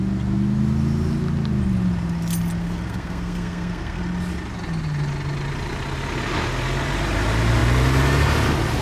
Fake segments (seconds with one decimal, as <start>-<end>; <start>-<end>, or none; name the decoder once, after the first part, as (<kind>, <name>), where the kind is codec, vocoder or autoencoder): 2.6-4.0 (codec, SNAC)

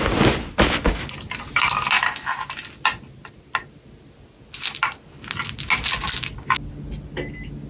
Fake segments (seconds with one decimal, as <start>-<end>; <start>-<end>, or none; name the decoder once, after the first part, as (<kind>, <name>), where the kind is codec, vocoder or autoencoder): none

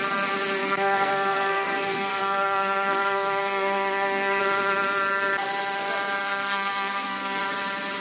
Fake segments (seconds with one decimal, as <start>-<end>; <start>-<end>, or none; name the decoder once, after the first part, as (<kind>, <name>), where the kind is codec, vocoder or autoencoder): 0.6-4.4 (codec, SNAC); 6.2-7.4